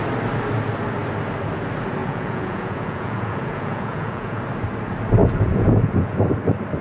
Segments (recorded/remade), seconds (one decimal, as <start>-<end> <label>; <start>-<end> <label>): 0.0-2.0 recorded; 2.0-4.4 remade; 4.4-5.2 recorded; 5.2-6.2 remade; 6.2-6.8 recorded